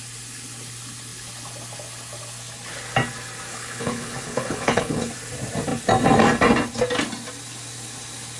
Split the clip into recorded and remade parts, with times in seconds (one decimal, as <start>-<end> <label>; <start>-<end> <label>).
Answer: 0.0-3.5 recorded; 3.5-5.1 remade; 5.1-8.4 recorded